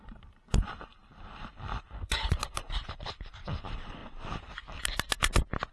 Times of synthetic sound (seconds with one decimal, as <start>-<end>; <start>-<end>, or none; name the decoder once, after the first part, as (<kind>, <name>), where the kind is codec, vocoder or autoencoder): 0.0-4.0 (vocoder, BigVGAN v2)